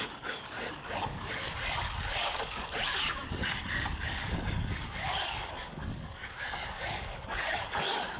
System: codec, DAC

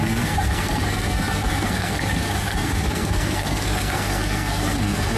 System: codec, SNAC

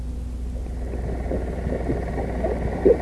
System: none